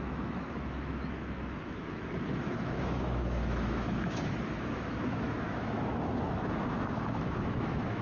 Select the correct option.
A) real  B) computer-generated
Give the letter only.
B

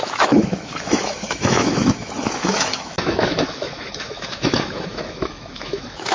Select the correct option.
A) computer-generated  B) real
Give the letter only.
A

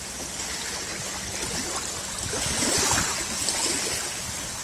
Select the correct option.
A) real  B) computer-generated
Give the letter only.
A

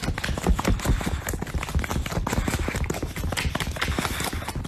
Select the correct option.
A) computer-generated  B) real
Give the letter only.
B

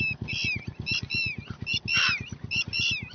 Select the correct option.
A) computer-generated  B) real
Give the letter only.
B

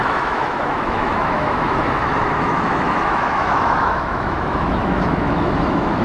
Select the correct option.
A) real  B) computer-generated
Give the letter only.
B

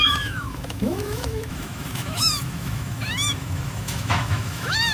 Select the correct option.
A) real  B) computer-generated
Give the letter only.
B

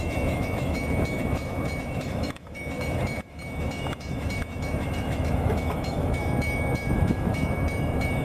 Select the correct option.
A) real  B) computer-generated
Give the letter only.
B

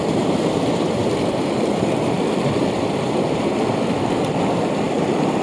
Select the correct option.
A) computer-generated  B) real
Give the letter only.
B